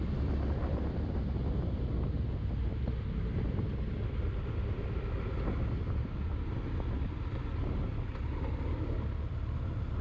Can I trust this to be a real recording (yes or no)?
yes